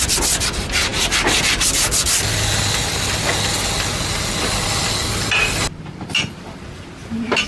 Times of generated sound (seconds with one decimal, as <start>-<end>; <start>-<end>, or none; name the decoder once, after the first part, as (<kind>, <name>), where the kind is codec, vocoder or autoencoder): none